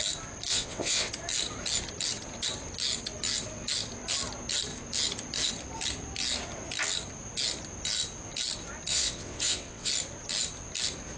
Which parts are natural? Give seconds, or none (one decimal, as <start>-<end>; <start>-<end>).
0.0-0.5; 1.1-8.9; 9.9-11.2